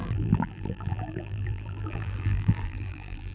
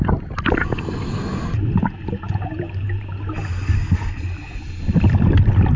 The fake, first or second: first